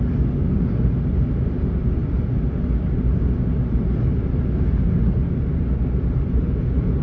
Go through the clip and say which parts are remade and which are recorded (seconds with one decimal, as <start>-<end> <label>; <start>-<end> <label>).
0.0-7.0 recorded